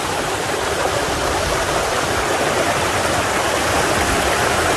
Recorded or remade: remade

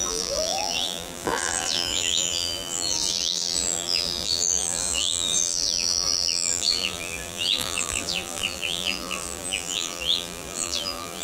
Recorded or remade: remade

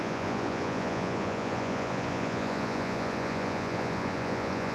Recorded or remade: remade